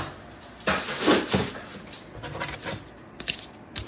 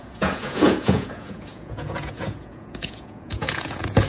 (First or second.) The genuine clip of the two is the first